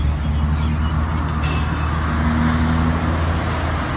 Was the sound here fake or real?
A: real